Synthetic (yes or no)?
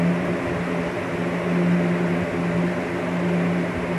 no